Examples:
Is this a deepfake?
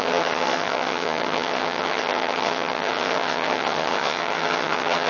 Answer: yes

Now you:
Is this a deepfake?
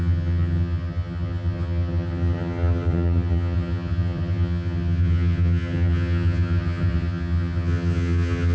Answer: yes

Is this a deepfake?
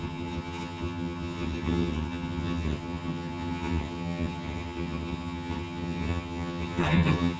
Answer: yes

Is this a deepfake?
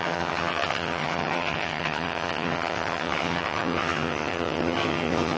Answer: yes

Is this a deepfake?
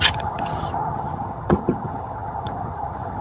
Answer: yes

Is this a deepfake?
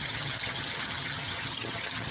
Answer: yes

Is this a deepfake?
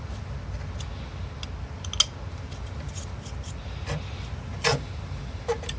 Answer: no